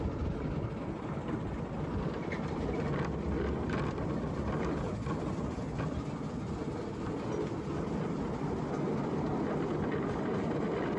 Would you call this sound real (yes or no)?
yes